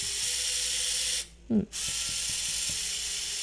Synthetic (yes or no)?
no